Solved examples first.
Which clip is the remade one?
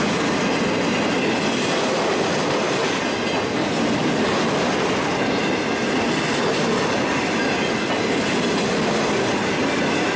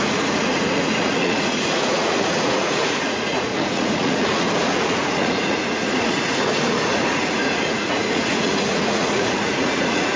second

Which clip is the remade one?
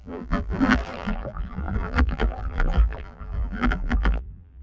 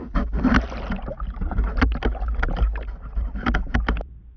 first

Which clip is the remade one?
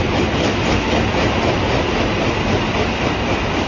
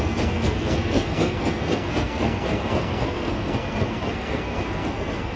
second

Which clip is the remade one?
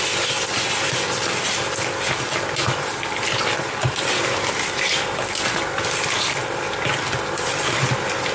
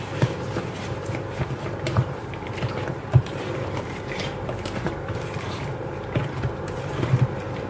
second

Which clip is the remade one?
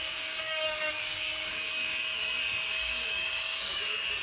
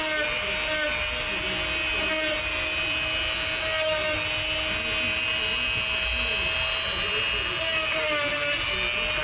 first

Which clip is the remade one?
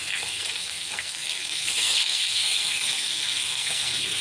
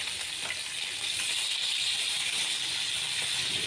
first